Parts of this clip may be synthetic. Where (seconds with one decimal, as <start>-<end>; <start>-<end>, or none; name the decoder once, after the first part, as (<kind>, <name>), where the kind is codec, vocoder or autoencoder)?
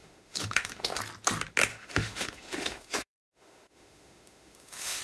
0.0-1.0 (autoencoder, DAC-VAE); 1.7-5.0